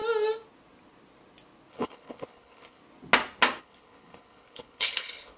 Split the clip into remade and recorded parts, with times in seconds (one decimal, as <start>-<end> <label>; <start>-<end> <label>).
0.0-1.7 recorded; 1.7-2.8 remade; 2.8-3.6 recorded; 3.6-5.4 remade